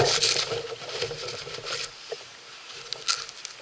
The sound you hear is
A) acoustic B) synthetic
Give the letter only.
A